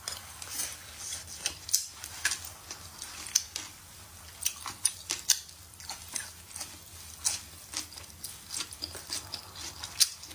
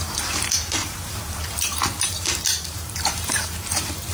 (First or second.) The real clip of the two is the first